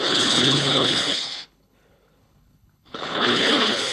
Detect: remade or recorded remade